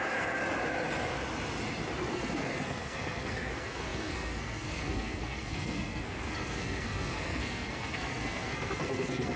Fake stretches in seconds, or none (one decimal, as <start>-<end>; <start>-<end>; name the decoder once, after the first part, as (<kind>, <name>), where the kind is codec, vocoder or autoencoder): 0.0-0.4 (codec, SNAC); 2.1-9.4